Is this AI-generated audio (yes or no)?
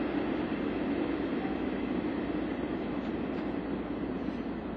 no